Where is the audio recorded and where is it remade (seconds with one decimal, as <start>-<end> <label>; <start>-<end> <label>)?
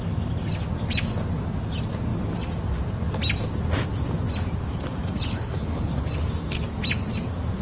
0.0-5.3 recorded; 5.3-5.9 remade; 5.9-7.6 recorded